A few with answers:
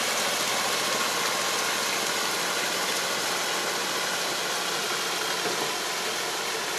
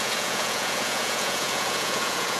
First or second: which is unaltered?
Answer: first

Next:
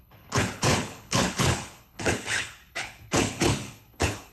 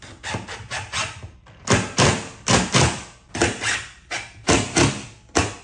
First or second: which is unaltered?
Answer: second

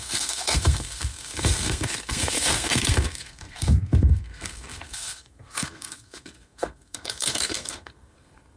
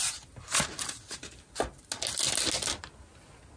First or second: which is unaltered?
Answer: second